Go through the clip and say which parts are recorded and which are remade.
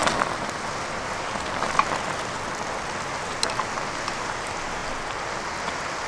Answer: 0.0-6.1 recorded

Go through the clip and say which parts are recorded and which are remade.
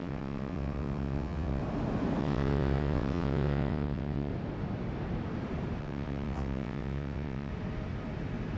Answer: 0.0-1.6 remade; 1.6-2.2 recorded; 2.2-4.3 remade; 4.3-5.8 recorded; 5.8-7.5 remade; 7.5-8.6 recorded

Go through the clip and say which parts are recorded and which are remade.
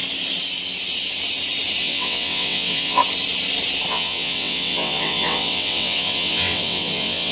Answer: 0.0-1.8 recorded; 1.8-3.0 remade; 3.0-3.9 recorded; 3.9-7.3 remade